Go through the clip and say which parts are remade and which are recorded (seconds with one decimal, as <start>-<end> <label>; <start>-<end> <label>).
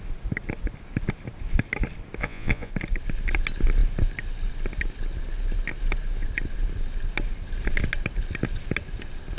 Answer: 0.0-2.2 recorded; 2.2-2.7 remade; 2.7-9.4 recorded